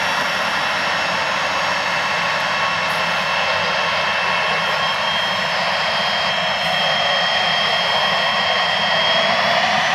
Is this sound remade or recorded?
recorded